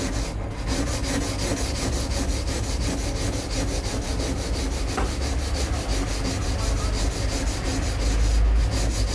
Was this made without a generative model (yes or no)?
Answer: yes